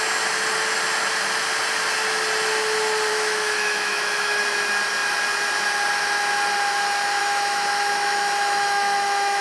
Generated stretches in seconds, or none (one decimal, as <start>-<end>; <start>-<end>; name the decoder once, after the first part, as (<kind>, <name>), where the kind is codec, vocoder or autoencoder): 3.1-4.4 (autoencoder, DAC-VAE); 7.2-9.4